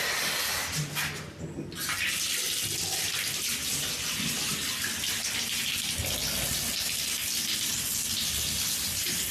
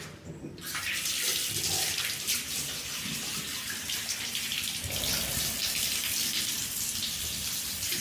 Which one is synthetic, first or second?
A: second